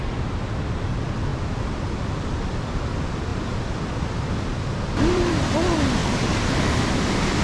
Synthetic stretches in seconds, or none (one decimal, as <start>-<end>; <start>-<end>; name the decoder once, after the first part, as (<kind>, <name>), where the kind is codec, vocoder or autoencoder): 0.9-6.0 (vocoder, BigVGAN v2); 6.6-7.4